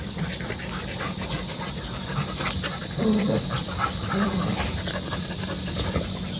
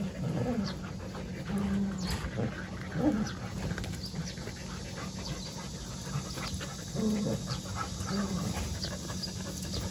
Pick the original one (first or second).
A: second